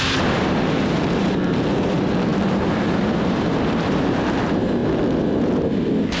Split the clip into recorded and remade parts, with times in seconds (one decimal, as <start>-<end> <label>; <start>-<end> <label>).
0.0-4.8 remade; 4.8-6.2 recorded